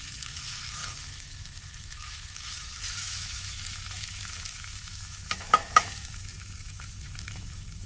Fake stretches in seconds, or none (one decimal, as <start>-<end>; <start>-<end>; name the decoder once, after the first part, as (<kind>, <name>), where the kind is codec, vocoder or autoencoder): 0.0-7.9 (autoencoder, DAC-VAE)

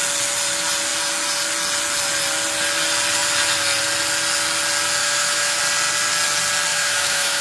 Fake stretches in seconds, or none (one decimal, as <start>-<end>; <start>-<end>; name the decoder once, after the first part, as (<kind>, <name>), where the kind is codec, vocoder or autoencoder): 5.0-5.6 (autoencoder, DAC-VAE); 6.7-7.4